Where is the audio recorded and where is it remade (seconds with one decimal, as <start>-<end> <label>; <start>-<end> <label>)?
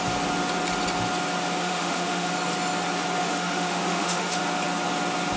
0.0-1.6 recorded; 1.6-2.3 remade; 2.3-3.2 recorded; 3.2-4.4 remade; 4.4-5.4 recorded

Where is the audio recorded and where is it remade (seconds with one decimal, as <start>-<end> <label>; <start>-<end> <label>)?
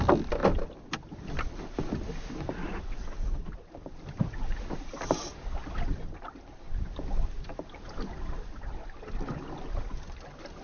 0.0-10.6 recorded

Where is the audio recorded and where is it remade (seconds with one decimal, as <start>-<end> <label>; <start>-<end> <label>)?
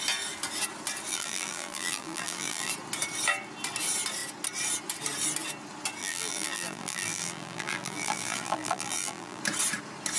0.0-1.1 recorded; 1.1-2.7 remade; 2.7-6.0 recorded; 6.0-9.4 remade; 9.4-10.2 recorded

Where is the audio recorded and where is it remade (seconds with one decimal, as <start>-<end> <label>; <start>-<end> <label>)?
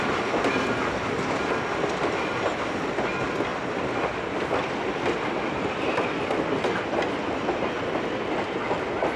0.0-9.2 recorded